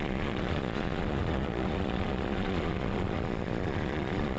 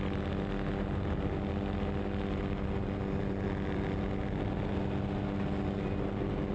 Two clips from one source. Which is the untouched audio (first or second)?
second